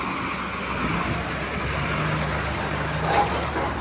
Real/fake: real